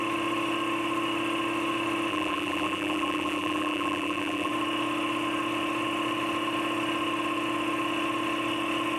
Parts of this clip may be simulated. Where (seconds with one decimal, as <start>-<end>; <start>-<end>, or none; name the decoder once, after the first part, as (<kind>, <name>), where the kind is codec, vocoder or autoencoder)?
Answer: 2.1-4.5 (vocoder, BigVGAN v2)